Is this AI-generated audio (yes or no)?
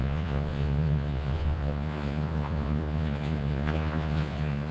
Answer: yes